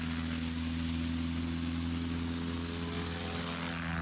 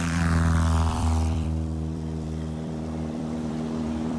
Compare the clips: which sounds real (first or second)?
first